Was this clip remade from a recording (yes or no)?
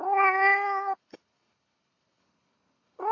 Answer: yes